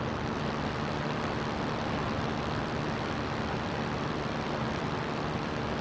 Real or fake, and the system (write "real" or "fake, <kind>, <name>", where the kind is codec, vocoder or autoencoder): real